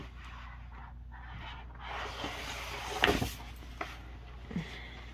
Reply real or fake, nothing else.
real